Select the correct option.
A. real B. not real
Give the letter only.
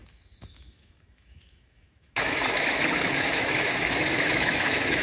B